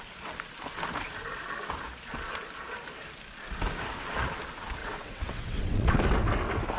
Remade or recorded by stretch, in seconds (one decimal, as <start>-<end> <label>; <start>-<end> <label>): 0.0-4.8 recorded; 4.8-6.0 remade; 6.0-6.8 recorded

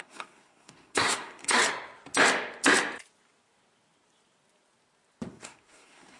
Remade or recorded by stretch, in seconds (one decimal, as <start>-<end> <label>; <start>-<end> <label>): 0.0-1.6 remade; 1.6-5.3 recorded; 5.3-6.2 remade

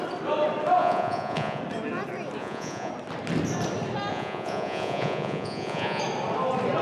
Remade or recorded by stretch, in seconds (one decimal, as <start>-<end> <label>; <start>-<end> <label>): 0.0-0.8 recorded; 0.8-1.6 remade; 1.6-2.4 recorded; 2.4-2.9 remade; 2.9-4.1 recorded; 4.1-6.0 remade; 6.0-6.8 recorded

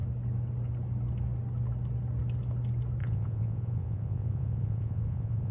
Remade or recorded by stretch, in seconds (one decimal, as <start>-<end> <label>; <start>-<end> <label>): 0.0-3.0 recorded; 3.0-5.5 remade

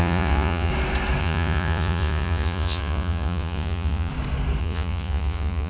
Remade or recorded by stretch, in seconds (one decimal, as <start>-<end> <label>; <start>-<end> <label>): 0.0-0.7 remade; 0.7-1.2 recorded; 1.2-4.1 remade; 4.1-4.6 recorded; 4.6-5.7 remade

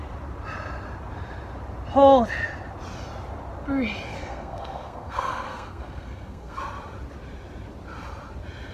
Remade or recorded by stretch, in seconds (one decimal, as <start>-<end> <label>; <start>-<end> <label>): 0.0-4.1 recorded; 4.1-6.6 remade; 6.6-8.7 recorded